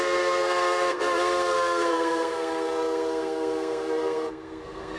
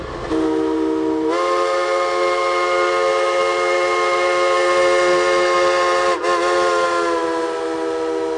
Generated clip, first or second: first